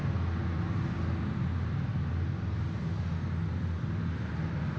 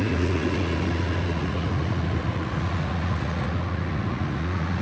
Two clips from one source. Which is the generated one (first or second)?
second